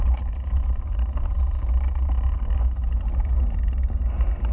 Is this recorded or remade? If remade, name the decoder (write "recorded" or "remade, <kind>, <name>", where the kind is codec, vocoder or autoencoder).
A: recorded